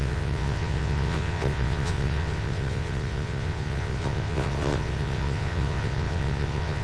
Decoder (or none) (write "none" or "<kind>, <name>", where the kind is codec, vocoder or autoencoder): vocoder, WaveNeXt